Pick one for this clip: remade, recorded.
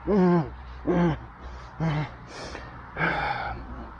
recorded